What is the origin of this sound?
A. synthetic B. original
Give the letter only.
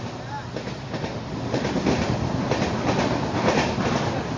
B